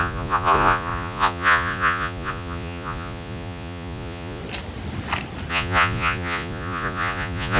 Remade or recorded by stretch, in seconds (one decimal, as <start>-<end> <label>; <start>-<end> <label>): 0.0-4.4 remade; 4.4-5.5 recorded; 5.5-7.6 remade